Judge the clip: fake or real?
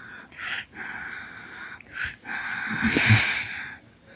real